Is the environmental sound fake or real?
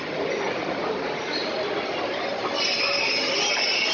real